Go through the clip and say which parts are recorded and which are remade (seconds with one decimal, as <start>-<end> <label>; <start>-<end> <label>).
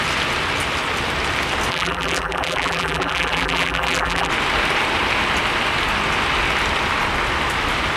0.0-1.7 recorded; 1.7-4.3 remade; 4.3-8.0 recorded